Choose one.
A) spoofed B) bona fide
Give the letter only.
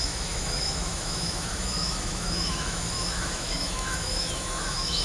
A